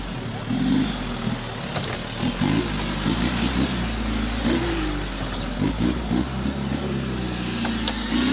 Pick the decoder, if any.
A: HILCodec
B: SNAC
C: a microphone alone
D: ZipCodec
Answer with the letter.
C